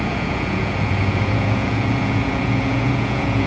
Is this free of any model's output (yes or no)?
no